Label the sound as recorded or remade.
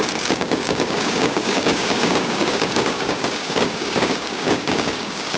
remade